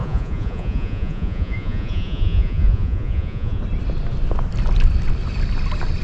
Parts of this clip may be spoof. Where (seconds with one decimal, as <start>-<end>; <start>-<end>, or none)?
0.0-3.6